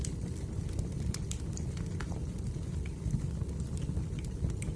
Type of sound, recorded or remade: recorded